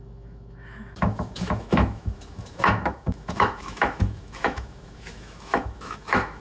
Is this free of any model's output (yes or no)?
no